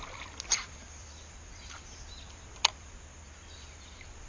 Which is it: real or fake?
real